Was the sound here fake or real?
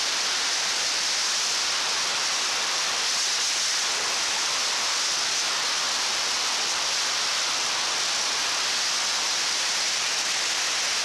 real